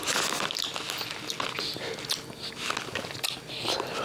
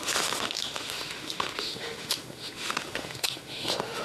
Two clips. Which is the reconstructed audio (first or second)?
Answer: second